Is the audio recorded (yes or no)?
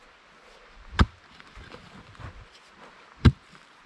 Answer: yes